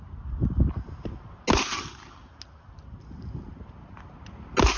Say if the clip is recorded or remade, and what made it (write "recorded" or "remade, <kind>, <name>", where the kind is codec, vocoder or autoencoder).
recorded